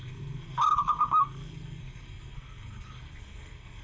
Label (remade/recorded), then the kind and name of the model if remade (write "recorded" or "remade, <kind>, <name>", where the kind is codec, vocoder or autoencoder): remade, codec, SNAC